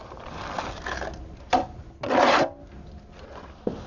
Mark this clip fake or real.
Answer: real